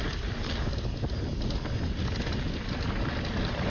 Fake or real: real